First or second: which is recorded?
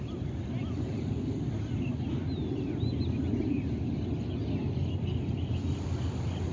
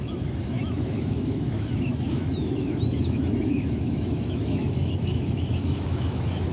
first